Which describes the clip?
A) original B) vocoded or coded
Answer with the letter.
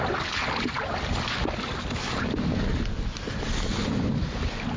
A